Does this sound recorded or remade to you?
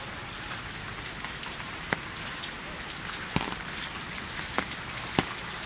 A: recorded